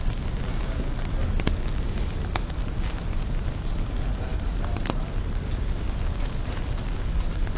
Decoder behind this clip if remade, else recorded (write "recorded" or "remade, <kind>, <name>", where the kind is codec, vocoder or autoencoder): recorded